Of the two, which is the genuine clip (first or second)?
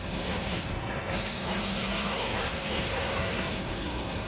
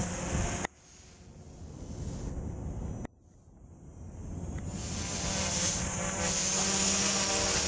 second